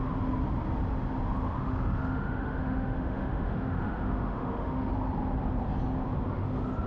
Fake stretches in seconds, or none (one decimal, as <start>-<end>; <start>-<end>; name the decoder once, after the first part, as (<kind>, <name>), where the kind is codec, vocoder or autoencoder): 1.6-4.9 (autoencoder, DAC-VAE)

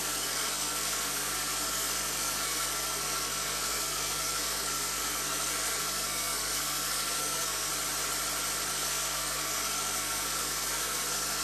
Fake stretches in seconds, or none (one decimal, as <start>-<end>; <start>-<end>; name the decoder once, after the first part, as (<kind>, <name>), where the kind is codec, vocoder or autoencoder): 0.0-7.7 (codec, SNAC); 8.7-11.4

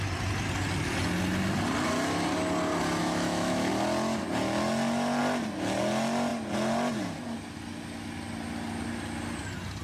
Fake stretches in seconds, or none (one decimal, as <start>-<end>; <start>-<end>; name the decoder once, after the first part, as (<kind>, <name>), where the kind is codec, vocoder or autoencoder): 3.0-3.7 (autoencoder, DAC-VAE)

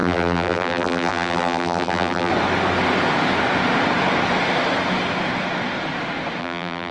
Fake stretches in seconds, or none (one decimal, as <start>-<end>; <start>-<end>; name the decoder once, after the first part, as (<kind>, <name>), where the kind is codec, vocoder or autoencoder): 0.0-2.3 (vocoder, BigVGAN v2); 6.4-6.9

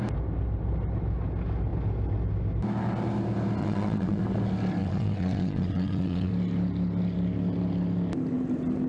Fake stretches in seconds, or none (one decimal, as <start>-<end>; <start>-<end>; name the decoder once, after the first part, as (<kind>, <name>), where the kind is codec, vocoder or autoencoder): 3.6-4.2 (vocoder, WaveNeXt); 4.8-6.3